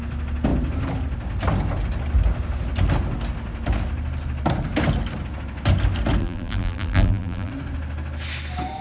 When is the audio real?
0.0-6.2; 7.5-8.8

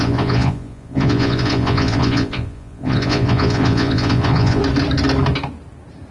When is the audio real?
4.6-6.1

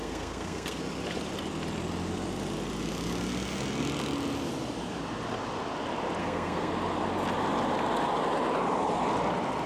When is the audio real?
0.8-6.2; 6.7-9.7

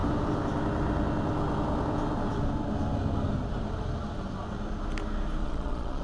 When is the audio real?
0.0-5.4